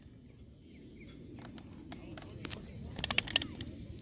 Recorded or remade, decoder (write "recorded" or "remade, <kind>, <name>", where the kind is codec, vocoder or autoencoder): recorded